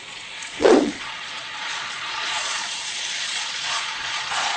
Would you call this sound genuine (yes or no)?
no